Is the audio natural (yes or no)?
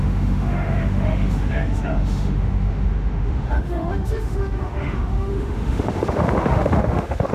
no